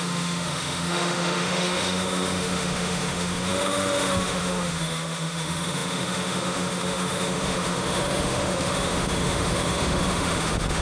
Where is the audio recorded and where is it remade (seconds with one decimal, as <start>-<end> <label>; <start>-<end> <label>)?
0.0-10.8 remade